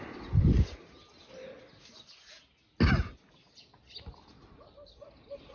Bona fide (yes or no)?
yes